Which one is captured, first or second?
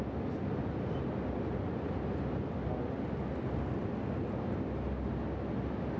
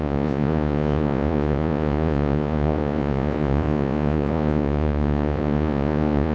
first